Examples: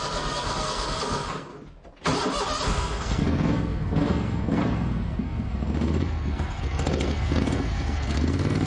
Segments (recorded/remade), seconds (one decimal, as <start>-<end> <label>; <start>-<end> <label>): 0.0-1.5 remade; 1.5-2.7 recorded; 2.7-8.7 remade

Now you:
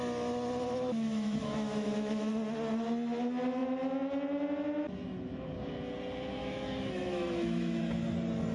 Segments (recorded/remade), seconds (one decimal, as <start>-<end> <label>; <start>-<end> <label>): 0.0-0.9 recorded; 0.9-2.3 remade; 2.3-6.4 recorded; 6.4-7.8 remade; 7.8-8.5 recorded

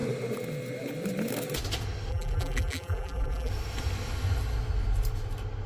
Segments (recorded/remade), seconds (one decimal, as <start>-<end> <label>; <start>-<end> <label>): 0.0-2.1 recorded; 2.1-3.5 remade; 3.5-5.7 recorded

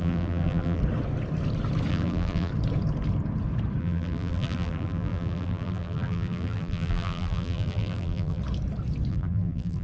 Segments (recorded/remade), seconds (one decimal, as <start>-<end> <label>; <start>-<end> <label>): 0.0-0.8 remade; 0.8-1.9 recorded; 1.9-2.5 remade; 2.5-3.8 recorded; 3.8-8.4 remade; 8.4-9.1 recorded; 9.1-9.8 remade

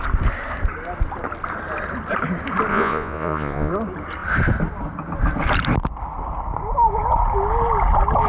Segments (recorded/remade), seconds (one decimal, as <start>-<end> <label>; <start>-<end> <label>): 0.0-2.7 recorded; 2.7-3.7 remade; 3.7-8.3 recorded